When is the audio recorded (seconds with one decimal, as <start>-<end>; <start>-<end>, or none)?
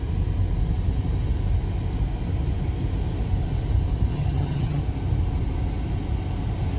0.0-4.1; 4.8-6.8